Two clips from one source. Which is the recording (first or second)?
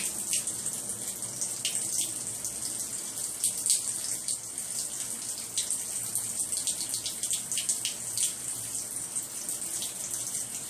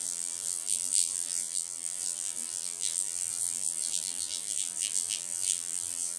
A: first